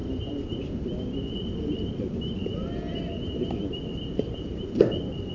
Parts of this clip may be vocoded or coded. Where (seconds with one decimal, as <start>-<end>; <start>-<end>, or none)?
0.0-0.8